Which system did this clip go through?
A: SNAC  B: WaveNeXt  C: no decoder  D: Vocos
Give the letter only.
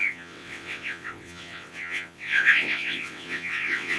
B